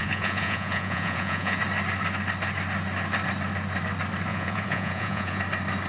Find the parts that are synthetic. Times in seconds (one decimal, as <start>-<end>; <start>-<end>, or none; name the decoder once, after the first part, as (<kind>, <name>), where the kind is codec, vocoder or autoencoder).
0.0-1.6 (vocoder, Vocos); 4.3-5.4